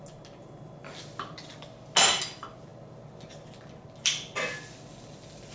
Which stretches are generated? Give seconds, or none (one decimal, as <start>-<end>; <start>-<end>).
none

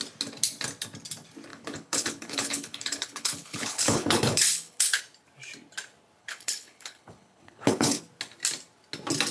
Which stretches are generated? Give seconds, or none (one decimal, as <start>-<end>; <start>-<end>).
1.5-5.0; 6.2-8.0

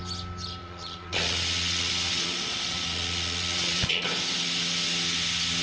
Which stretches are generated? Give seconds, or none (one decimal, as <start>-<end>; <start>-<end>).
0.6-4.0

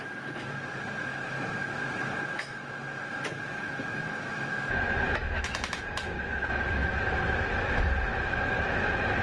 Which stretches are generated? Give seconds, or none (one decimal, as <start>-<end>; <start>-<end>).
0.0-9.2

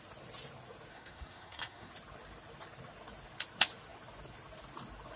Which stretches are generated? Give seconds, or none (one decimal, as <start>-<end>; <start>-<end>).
0.9-1.9

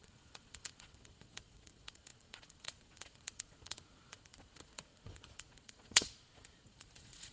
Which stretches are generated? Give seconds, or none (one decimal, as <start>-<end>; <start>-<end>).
0.0-7.3

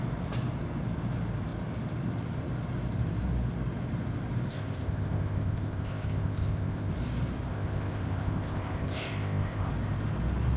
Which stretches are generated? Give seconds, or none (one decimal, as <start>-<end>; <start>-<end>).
4.5-6.9; 7.5-9.7

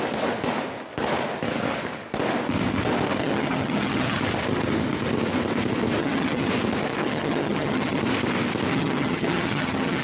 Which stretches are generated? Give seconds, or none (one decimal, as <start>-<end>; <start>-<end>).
3.2-4.2; 6.0-6.5; 7.0-8.0; 8.7-10.0